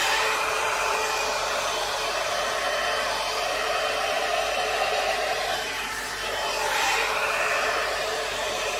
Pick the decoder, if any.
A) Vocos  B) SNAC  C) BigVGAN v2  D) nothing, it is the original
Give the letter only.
C